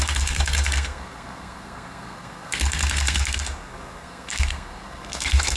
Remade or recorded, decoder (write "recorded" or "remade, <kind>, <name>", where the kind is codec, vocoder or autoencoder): remade, codec, SNAC